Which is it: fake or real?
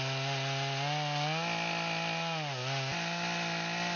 real